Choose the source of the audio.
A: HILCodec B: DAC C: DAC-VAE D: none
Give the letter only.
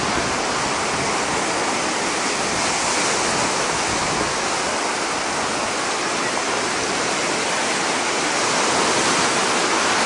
D